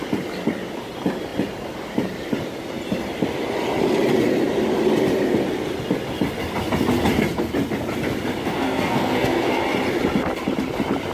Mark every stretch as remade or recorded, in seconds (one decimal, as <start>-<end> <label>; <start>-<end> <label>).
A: 0.0-8.4 recorded; 8.4-9.6 remade; 9.6-11.1 recorded